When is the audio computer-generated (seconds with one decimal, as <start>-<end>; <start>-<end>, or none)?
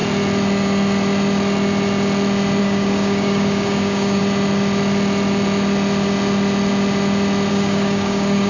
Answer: 2.6-4.2; 7.5-8.5